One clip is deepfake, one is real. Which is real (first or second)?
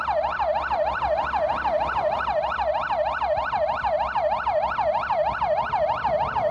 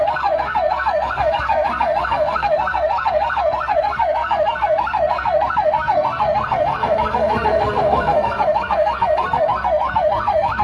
first